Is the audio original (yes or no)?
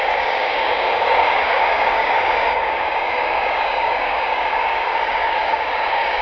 no